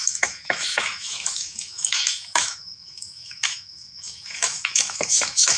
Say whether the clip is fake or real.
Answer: fake